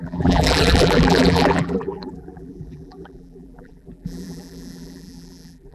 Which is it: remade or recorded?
remade